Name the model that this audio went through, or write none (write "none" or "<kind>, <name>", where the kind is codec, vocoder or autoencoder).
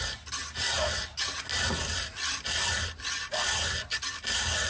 none